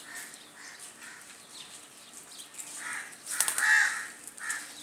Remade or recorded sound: recorded